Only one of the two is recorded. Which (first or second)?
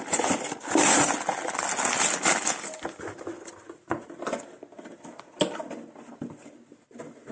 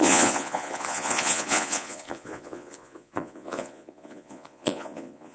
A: first